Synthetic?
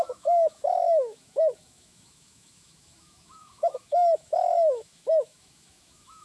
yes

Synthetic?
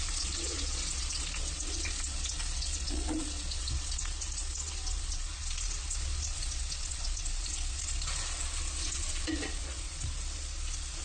yes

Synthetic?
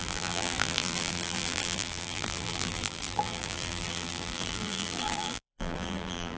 yes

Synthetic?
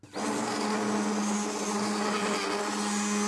no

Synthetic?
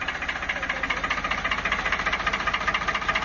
no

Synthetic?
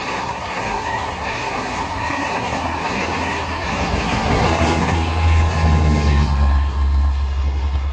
yes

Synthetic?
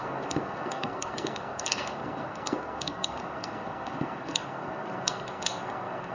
yes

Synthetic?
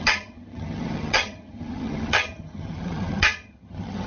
yes